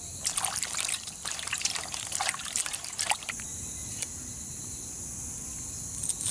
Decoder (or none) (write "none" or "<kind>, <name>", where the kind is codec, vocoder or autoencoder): none